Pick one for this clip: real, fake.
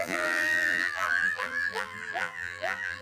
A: fake